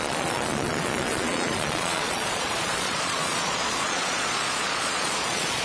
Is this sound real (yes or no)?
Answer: no